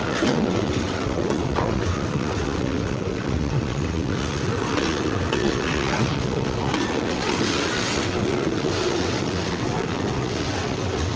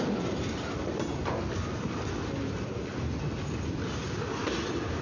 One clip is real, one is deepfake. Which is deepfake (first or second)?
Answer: first